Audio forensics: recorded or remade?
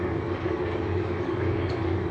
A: remade